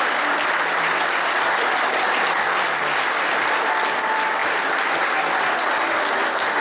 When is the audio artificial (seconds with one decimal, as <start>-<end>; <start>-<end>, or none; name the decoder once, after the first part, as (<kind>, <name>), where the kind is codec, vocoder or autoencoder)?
none